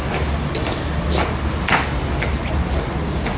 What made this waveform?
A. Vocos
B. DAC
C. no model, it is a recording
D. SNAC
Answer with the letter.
C